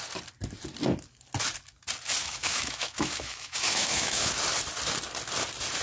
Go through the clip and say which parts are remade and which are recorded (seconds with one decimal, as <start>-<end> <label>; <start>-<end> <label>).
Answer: 0.0-2.2 recorded; 2.2-4.3 remade; 4.3-5.8 recorded